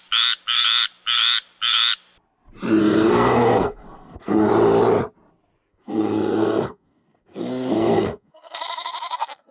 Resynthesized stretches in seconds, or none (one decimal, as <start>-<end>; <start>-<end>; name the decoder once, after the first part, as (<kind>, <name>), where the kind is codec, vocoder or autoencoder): 2.8-4.5 (codec, SNAC); 5.7-9.5